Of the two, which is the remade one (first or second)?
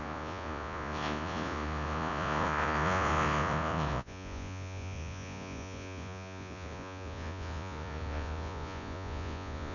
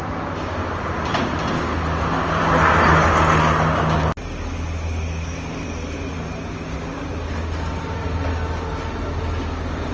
first